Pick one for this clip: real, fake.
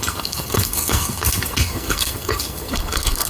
fake